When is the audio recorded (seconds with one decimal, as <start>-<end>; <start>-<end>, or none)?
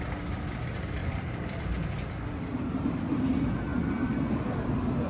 0.0-1.0; 1.6-3.7